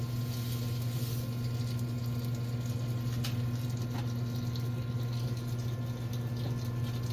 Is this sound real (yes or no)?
yes